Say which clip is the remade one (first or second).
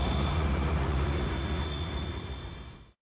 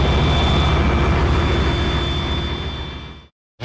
first